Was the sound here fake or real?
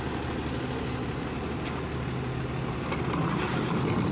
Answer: real